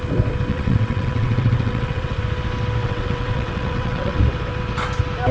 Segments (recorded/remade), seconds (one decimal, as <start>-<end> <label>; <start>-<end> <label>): 0.0-0.5 recorded; 0.5-2.2 remade; 2.2-2.8 recorded; 2.8-4.2 remade; 4.2-5.3 recorded